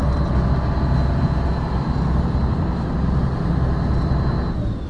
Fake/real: real